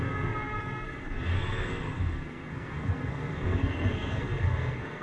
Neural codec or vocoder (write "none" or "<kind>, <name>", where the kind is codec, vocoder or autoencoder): codec, SNAC